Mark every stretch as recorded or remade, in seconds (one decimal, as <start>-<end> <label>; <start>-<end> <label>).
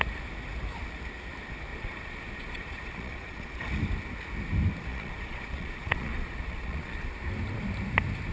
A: 0.0-1.7 recorded; 1.7-3.6 remade; 3.6-4.9 recorded; 4.9-7.1 remade; 7.1-8.3 recorded